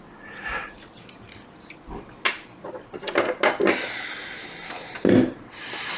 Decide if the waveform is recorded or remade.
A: recorded